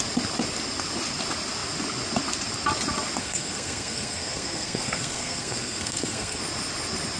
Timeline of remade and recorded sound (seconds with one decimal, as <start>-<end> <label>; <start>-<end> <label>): 0.0-3.2 recorded; 3.2-6.4 remade; 6.4-7.2 recorded